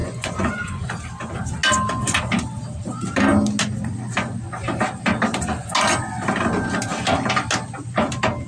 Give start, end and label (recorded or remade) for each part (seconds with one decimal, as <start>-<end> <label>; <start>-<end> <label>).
0.0-0.8 remade; 0.8-8.5 recorded